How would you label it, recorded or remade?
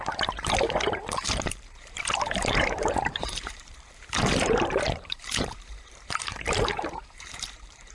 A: remade